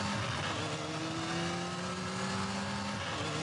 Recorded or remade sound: recorded